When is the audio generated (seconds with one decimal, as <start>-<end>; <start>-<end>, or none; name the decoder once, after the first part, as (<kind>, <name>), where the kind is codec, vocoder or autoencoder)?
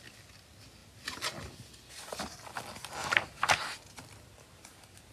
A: 3.0-3.5 (vocoder, BigVGAN v2); 4.3-5.1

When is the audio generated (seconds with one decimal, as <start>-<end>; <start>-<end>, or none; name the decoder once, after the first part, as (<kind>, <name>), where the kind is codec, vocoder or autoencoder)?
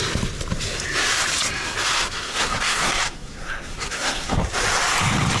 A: 2.1-4.4 (codec, SNAC)